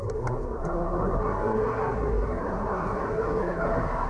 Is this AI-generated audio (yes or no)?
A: yes